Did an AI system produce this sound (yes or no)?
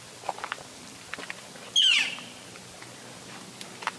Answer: no